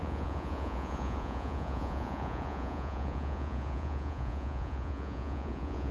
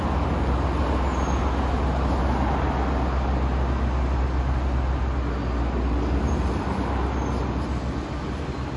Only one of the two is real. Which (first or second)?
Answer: second